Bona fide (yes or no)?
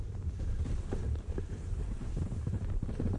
no